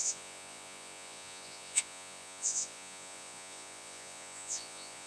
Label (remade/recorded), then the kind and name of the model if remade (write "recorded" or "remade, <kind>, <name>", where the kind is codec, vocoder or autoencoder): remade, vocoder, Vocos